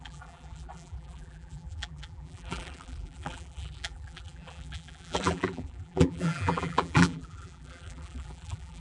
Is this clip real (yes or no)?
no